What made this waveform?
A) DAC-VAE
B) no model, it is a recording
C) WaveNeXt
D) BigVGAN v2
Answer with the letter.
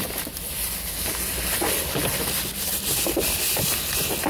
B